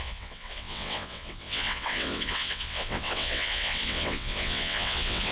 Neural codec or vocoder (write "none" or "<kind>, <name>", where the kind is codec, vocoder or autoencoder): vocoder, WaveNeXt